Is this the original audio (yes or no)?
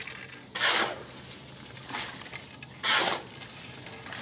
yes